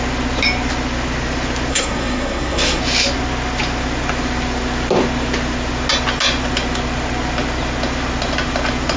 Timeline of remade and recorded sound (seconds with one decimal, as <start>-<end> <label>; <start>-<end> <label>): 0.0-1.7 recorded; 1.7-2.8 remade; 2.8-9.0 recorded